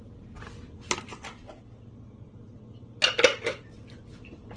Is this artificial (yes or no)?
no